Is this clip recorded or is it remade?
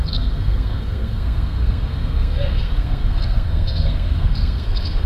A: remade